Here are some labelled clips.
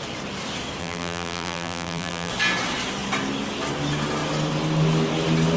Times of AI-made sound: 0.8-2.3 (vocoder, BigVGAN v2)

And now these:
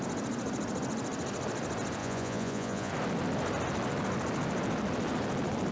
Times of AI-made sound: 2.0-2.9 (vocoder, Vocos)

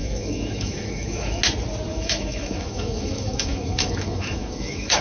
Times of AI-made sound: 0.0-1.4 (autoencoder, DAC-VAE); 1.9-5.0

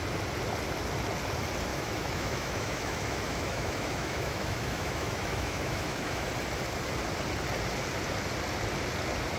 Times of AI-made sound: 1.7-6.3 (autoencoder, DAC-VAE)

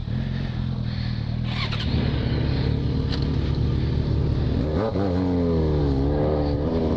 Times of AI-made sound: none